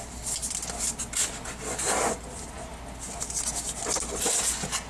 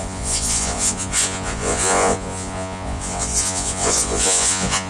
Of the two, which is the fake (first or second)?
second